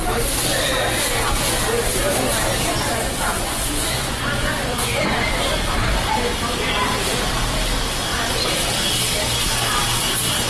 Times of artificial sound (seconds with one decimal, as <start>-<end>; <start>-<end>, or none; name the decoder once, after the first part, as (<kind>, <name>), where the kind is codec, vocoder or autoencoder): 2.7-5.3 (vocoder, Vocos)